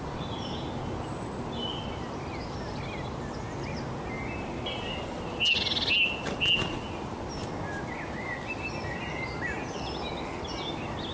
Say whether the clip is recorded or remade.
recorded